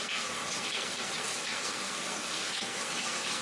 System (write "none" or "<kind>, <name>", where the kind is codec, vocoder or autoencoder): codec, SNAC